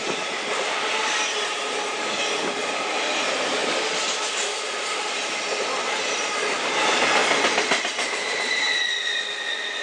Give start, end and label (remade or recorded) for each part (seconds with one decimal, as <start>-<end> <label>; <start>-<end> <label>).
0.0-9.8 recorded